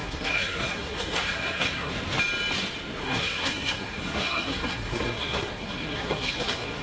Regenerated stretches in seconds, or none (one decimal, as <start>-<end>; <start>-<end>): 0.0-1.9; 3.0-6.8